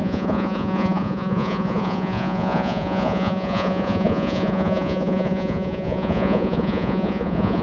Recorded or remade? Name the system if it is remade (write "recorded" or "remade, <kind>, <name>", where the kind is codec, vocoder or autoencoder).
remade, vocoder, Vocos